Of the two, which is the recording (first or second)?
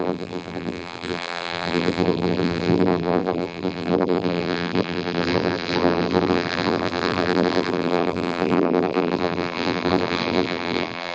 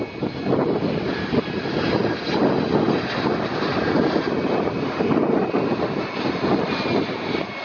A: second